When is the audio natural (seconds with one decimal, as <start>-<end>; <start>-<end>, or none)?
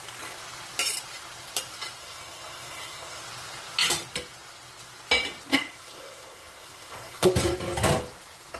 0.0-2.0; 3.2-5.5; 7.3-8.6